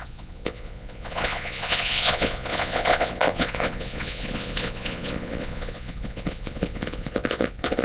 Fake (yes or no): yes